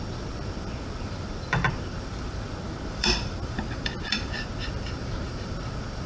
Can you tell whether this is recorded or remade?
remade